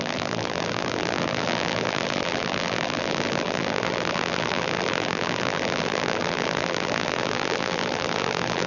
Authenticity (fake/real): fake